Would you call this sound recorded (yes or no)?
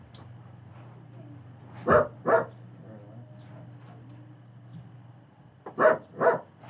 yes